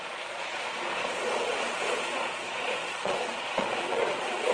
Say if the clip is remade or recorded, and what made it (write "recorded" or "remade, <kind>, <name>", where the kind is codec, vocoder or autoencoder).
remade, vocoder, Vocos